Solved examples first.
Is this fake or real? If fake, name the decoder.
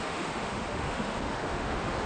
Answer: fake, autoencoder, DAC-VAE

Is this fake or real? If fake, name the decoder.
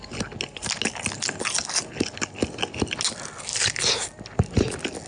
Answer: real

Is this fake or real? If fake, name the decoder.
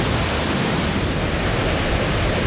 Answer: real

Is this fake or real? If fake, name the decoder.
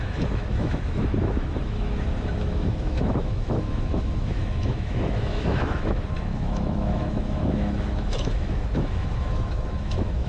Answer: fake, autoencoder, DAC-VAE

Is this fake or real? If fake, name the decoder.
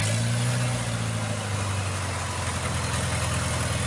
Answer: real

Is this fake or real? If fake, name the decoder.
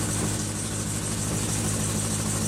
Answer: real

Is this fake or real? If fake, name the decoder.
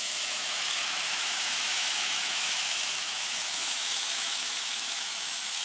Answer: fake, autoencoder, DAC-VAE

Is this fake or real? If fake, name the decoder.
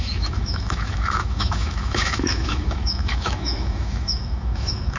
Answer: fake, autoencoder, DAC-VAE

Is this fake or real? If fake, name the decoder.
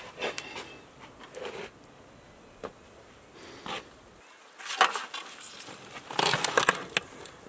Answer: real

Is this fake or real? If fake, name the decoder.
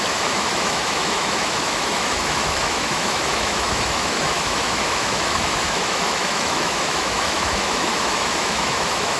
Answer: fake, autoencoder, DAC-VAE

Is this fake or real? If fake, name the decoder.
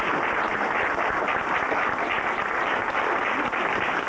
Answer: real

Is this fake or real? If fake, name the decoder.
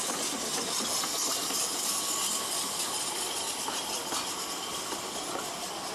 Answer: real